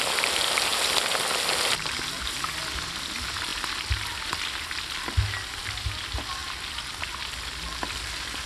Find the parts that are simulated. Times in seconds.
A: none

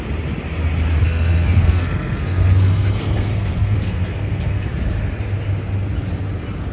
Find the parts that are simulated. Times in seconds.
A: 1.0-4.7 (codec, SNAC)

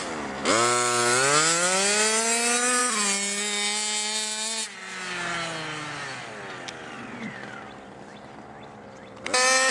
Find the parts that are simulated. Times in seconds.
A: none

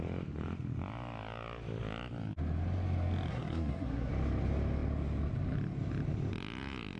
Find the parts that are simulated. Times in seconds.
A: 3.3-4.1 (codec, SNAC)

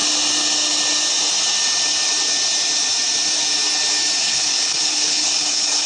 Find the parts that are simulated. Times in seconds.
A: 4.2-5.9 (codec, HILCodec)

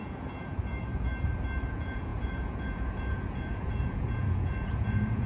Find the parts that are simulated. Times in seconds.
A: 0.0-1.1 (vocoder, Vocos); 1.7-5.3

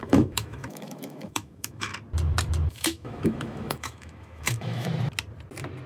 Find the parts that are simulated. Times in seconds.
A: 0.0-1.9 (autoencoder, DAC-VAE); 2.7-4.9

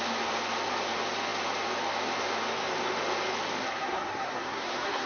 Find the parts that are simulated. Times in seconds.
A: 3.6-5.1 (codec, SNAC)